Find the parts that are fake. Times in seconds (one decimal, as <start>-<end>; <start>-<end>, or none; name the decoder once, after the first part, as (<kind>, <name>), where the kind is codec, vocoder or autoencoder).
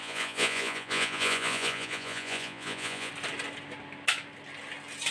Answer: 0.0-3.1 (vocoder, Vocos)